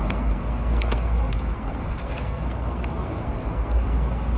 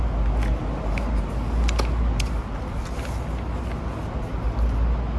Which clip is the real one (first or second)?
second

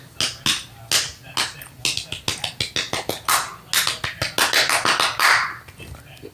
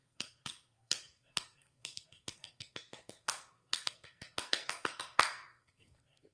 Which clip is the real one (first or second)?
first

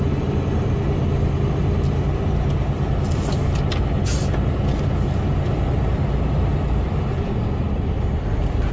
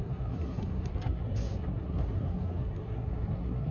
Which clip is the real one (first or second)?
first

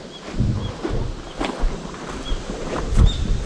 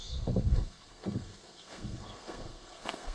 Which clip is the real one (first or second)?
first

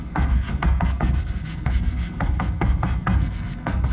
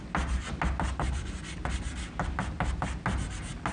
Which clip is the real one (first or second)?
second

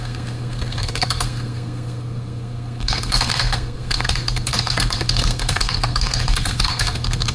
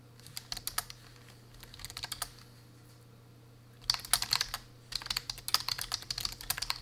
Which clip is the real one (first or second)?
second